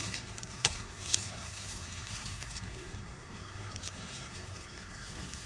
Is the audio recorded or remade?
remade